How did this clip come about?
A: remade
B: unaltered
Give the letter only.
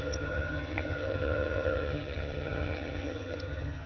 A